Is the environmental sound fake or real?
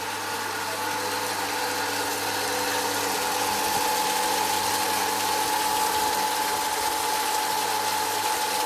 real